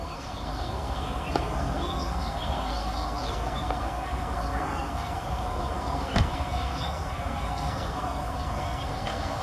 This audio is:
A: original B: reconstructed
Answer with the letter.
B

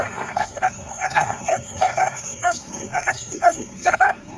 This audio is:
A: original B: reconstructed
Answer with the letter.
B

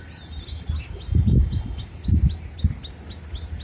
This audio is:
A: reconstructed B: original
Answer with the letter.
B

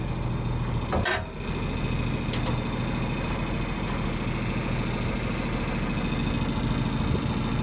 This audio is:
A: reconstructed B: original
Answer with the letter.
B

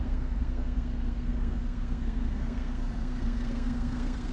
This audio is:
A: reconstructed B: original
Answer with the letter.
A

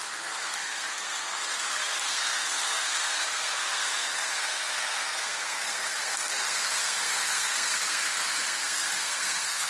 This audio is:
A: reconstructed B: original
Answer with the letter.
A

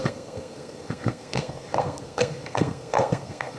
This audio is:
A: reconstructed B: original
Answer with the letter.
A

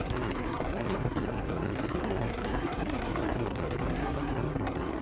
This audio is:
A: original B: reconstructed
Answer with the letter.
B